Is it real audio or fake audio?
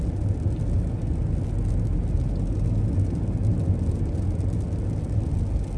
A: real